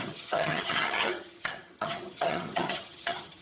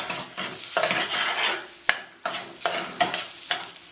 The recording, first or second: second